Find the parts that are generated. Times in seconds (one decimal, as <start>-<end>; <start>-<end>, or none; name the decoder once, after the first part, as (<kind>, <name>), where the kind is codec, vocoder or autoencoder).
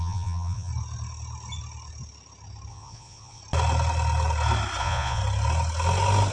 0.0-0.7 (vocoder, Vocos); 2.7-3.4; 4.8-5.2